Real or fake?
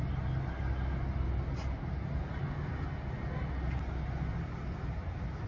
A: real